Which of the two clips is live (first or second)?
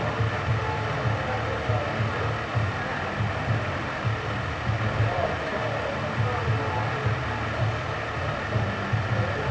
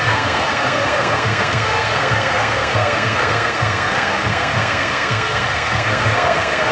first